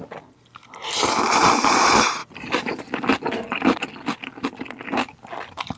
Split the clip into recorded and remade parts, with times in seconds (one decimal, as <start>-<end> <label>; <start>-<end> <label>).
0.0-5.8 recorded